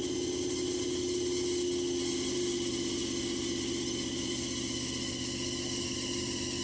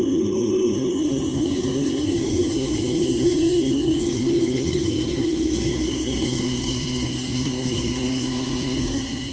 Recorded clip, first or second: first